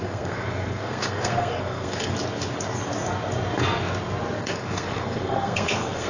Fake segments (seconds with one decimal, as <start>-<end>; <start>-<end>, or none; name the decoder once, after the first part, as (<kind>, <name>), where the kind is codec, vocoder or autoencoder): 0.0-2.1 (codec, SNAC); 4.4-6.1